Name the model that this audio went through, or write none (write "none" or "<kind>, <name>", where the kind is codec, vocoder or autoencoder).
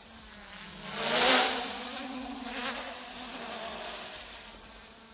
none